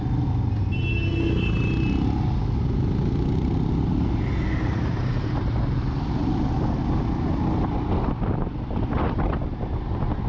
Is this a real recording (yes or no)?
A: yes